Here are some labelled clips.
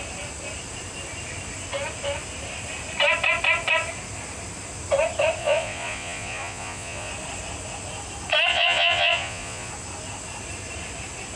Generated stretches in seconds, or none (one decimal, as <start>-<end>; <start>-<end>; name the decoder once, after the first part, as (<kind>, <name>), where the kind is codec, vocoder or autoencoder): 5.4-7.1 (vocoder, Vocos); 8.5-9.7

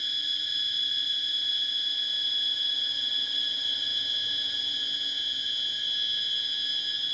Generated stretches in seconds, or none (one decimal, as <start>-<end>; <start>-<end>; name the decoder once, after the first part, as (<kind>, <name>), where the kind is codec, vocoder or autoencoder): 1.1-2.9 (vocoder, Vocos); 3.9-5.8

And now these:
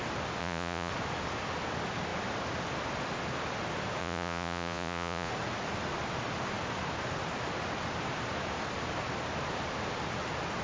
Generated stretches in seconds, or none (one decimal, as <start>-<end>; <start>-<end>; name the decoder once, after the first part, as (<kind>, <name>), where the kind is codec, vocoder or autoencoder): 0.4-0.9 (vocoder, Vocos); 4.0-5.3

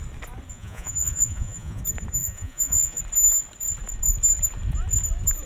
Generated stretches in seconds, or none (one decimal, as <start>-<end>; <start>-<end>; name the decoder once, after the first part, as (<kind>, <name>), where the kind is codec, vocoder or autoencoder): 0.5-1.8 (vocoder, Vocos); 2.2-3.0